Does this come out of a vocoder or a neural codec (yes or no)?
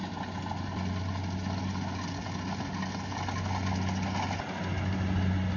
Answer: no